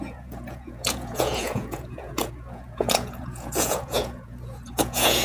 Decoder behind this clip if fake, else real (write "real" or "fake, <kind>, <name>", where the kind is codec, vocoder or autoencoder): fake, vocoder, Vocos